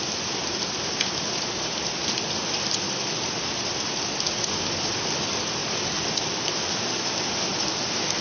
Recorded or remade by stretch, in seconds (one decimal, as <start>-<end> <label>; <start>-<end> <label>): 0.0-8.2 recorded